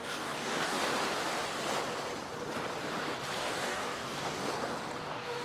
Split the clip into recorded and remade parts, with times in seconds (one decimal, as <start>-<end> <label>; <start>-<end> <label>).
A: 0.0-0.8 remade; 0.8-3.4 recorded; 3.4-4.4 remade; 4.4-5.0 recorded; 5.0-5.4 remade